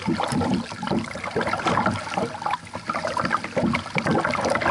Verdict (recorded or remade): recorded